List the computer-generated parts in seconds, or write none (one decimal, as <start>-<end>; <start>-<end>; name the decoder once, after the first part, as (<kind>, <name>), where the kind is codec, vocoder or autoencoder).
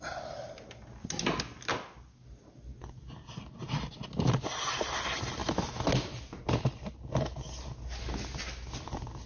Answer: none